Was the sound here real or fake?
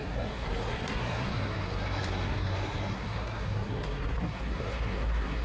fake